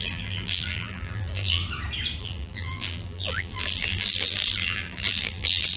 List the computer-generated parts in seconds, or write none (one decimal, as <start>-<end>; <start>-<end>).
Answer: 0.0-1.6; 2.2-5.8